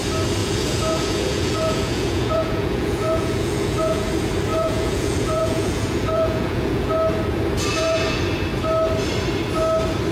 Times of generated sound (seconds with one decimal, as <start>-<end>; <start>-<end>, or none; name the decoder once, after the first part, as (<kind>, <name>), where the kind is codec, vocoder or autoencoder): 0.4-4.1 (vocoder, Vocos); 4.5-6.9; 7.7-8.2